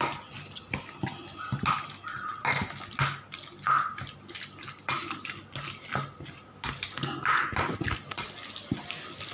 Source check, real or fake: real